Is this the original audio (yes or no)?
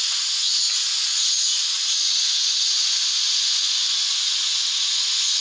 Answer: no